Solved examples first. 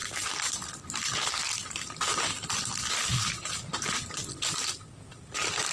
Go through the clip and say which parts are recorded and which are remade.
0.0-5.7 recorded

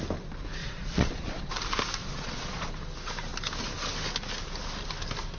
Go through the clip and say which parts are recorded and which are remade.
0.0-0.6 recorded; 0.6-1.5 remade; 1.5-2.0 recorded; 2.0-2.7 remade; 2.7-5.4 recorded